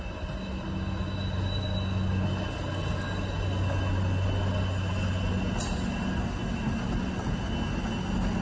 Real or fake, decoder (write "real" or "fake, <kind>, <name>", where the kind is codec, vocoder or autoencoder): real